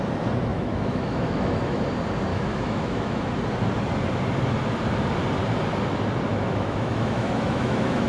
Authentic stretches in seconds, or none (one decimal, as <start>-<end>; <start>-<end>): 0.0-0.5; 1.8-2.3; 3.2-6.3